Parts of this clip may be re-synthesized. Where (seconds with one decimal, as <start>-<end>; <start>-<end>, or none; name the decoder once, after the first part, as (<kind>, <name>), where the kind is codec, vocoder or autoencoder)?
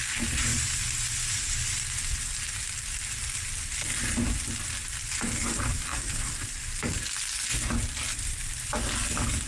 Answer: none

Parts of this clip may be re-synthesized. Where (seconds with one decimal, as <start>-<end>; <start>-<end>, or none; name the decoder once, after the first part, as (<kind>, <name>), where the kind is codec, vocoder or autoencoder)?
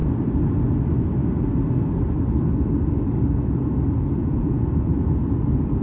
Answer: 4.2-5.2 (vocoder, Vocos)